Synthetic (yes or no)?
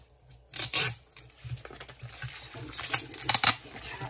no